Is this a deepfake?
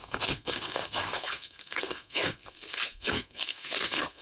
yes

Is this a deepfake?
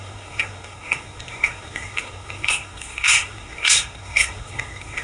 yes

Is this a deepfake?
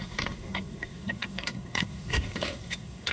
yes